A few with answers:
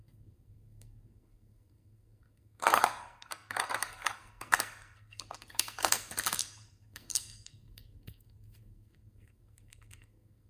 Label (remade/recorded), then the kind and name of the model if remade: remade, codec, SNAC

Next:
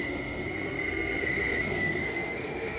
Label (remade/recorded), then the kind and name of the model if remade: remade, codec, SNAC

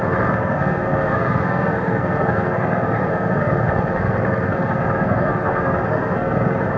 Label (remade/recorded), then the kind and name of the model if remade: remade, codec, SNAC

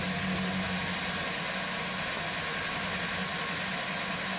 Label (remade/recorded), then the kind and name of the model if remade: recorded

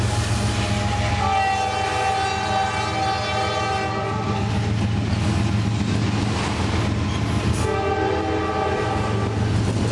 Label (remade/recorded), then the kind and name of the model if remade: recorded